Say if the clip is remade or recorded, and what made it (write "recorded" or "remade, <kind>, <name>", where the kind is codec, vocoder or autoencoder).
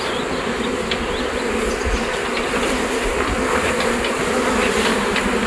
recorded